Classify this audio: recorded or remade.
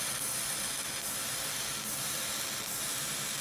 recorded